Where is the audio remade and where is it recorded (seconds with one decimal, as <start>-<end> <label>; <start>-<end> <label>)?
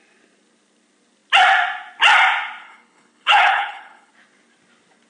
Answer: 0.0-2.6 recorded; 2.6-4.1 remade; 4.1-5.1 recorded